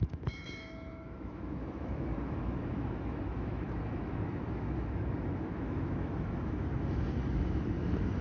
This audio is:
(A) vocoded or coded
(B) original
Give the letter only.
A